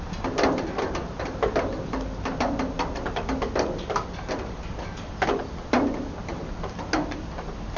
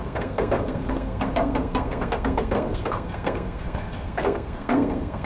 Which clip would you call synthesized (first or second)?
second